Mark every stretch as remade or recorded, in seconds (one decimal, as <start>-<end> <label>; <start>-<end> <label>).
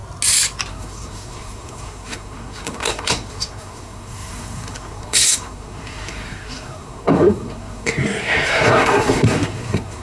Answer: 0.0-0.7 recorded; 0.7-10.0 remade